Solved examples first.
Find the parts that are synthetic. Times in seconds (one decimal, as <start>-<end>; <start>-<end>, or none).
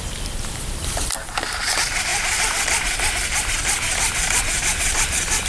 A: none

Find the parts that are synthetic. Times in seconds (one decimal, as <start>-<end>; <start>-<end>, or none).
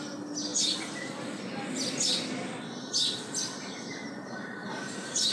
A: 4.6-5.3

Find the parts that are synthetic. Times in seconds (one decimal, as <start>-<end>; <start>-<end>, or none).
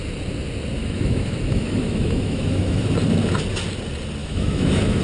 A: 0.8-2.9; 4.2-5.0